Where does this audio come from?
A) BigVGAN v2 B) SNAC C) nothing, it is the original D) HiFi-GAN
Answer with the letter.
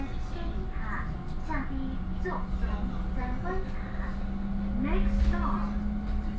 C